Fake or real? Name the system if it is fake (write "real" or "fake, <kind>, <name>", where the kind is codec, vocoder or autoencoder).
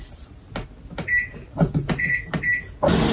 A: real